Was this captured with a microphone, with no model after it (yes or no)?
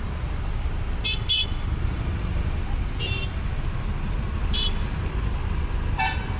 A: yes